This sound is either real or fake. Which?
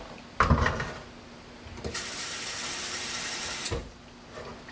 real